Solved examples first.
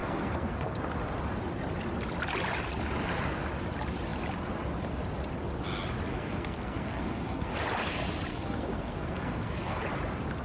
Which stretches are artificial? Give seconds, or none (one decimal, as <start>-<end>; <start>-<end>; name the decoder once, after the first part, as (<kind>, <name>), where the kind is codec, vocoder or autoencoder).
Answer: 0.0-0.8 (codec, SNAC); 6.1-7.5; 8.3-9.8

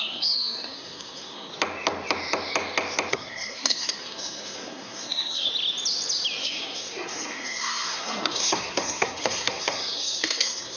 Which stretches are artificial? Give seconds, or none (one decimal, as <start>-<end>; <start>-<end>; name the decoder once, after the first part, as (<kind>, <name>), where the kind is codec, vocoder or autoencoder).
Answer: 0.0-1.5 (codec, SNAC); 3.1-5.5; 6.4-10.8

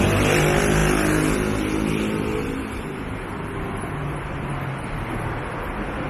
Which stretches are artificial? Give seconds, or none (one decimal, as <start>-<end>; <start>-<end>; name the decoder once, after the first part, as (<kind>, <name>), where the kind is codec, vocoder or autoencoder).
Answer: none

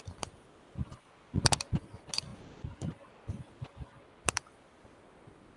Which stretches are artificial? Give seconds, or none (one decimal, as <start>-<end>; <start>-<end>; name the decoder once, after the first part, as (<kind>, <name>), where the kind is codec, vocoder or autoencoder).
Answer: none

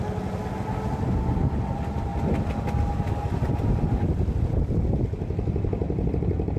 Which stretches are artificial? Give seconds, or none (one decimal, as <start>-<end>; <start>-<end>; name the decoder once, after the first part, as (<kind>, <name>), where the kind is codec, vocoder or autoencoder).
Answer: none

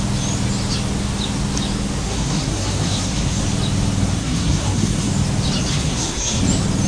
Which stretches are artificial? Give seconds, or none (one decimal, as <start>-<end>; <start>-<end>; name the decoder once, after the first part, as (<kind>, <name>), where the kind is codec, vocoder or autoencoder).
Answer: 2.0-3.4 (codec, SNAC); 4.2-5.1; 5.7-6.4

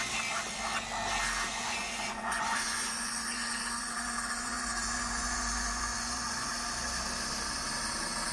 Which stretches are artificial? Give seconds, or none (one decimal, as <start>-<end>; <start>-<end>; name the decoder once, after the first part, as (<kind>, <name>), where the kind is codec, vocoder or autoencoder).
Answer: 1.5-6.5 (vocoder, Vocos)

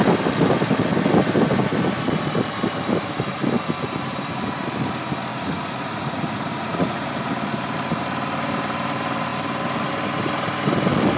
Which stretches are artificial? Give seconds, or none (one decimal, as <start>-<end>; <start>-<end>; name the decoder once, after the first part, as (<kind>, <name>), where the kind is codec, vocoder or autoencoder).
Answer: 5.3-7.1 (vocoder, Vocos)